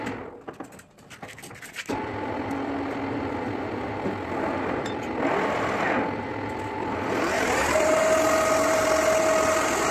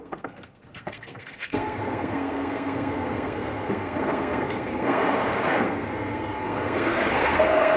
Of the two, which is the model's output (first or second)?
second